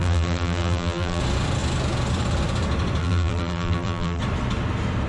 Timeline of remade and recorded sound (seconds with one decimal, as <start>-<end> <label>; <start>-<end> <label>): 0.0-1.2 remade; 1.2-3.0 recorded; 3.0-4.2 remade; 4.2-5.1 recorded